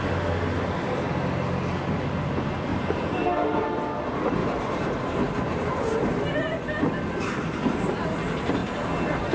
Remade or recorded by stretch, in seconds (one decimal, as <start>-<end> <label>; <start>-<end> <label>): 0.0-2.7 recorded; 2.7-3.7 remade; 3.7-4.4 recorded; 4.4-6.4 remade; 6.4-9.3 recorded